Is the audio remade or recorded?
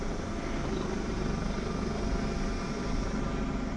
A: recorded